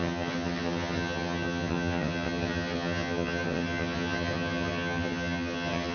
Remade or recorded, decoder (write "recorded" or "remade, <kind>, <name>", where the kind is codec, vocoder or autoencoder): remade, vocoder, HiFi-GAN